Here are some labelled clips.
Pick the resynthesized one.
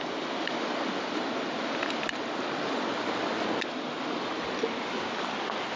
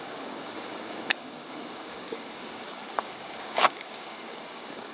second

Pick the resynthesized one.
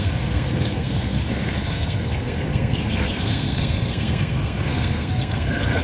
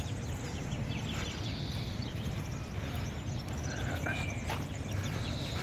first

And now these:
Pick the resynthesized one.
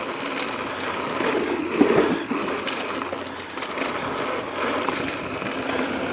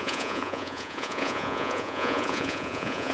second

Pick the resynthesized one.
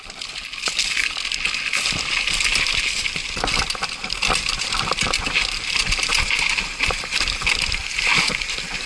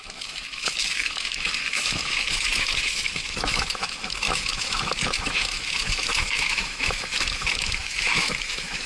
second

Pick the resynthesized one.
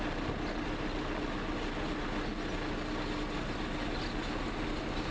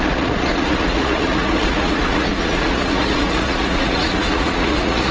second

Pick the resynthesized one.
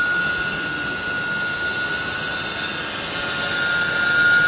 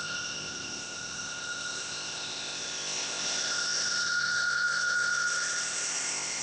second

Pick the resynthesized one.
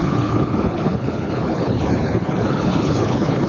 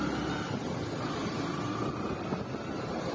first